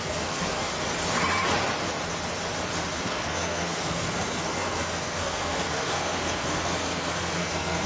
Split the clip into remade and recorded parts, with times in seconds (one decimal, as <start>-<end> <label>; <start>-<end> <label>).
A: 0.0-0.7 remade; 0.7-3.0 recorded; 3.0-7.9 remade